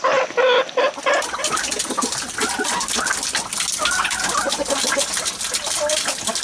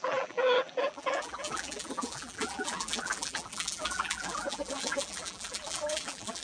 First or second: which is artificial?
second